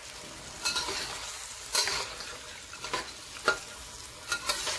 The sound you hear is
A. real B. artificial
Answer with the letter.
A